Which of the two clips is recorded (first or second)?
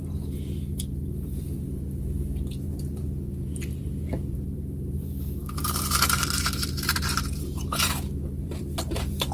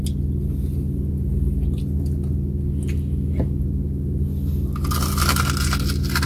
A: second